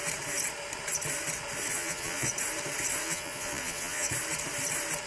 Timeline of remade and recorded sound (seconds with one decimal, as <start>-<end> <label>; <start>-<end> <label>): 0.0-1.7 recorded; 1.7-2.3 remade; 2.3-3.0 recorded; 3.0-4.1 remade; 4.1-5.1 recorded